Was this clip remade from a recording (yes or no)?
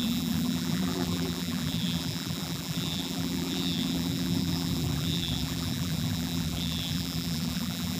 yes